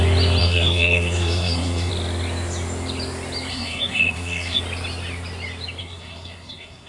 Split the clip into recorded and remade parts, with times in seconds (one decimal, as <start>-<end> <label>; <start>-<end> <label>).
0.0-0.4 recorded; 0.4-1.9 remade; 1.9-3.5 recorded; 3.5-4.6 remade; 4.6-5.8 recorded; 5.8-6.9 remade